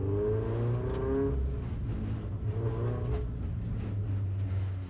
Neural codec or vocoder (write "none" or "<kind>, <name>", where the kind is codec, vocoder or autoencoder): none